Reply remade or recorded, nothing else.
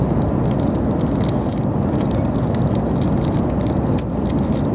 recorded